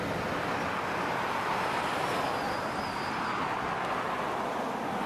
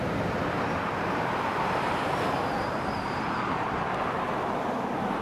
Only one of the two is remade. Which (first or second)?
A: second